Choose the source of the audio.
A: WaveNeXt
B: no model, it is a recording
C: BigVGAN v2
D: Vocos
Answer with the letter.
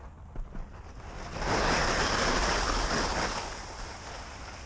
B